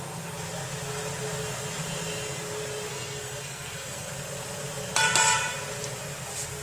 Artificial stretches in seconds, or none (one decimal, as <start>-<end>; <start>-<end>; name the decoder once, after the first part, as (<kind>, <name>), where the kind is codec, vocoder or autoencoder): 2.9-4.1 (codec, SNAC)